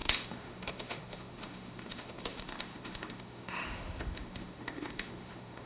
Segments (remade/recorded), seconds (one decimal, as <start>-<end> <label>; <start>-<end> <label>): 0.0-5.7 remade